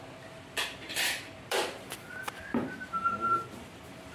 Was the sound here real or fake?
fake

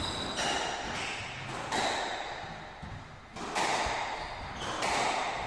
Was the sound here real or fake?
real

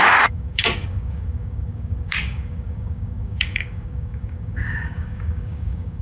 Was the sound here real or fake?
fake